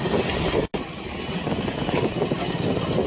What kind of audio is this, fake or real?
real